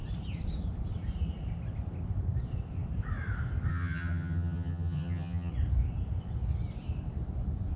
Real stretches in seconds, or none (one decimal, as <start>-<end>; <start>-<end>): 0.0-3.7; 5.5-7.8